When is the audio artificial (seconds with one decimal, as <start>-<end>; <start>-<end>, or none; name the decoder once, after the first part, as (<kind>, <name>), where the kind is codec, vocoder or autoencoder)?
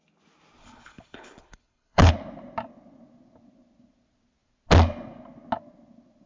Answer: 0.6-2.1 (codec, HILCodec)